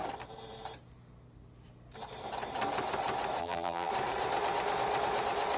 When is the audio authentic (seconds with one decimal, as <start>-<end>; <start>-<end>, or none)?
0.0-3.4; 3.9-5.6

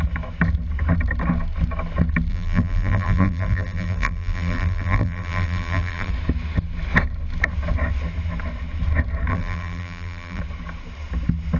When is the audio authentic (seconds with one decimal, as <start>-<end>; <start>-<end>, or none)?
0.0-2.3; 6.1-9.3; 10.4-11.6